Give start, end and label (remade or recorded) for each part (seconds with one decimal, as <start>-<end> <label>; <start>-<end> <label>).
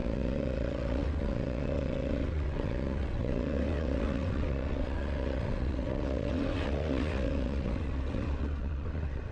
0.0-9.3 remade